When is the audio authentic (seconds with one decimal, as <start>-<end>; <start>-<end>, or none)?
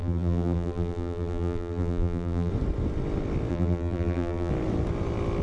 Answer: 2.5-3.5; 4.5-5.4